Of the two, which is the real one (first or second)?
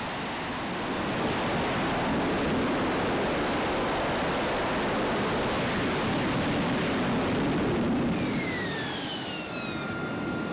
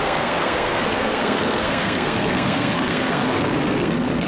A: first